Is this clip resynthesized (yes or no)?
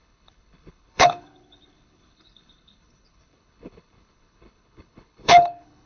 yes